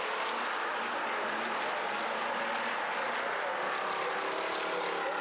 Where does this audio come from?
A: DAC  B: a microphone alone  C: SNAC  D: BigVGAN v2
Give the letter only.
B